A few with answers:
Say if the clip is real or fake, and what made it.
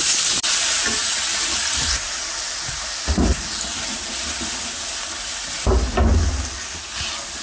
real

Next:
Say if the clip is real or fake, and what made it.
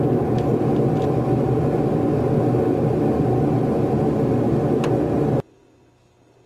real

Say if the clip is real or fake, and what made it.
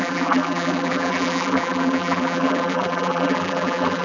fake, vocoder, BigVGAN v2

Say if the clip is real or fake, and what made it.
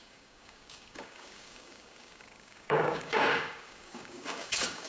fake, codec, DAC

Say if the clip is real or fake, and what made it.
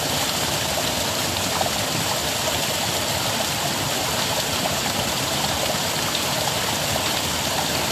fake, vocoder, BigVGAN v2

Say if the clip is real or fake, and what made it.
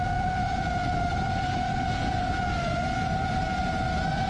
real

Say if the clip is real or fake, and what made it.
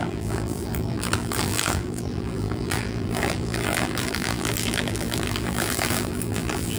fake, vocoder, BigVGAN v2